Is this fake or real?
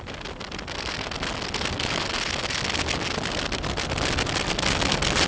real